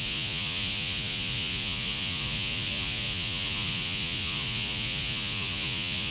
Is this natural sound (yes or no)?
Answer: no